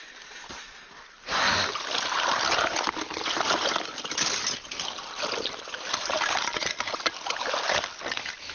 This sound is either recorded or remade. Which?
recorded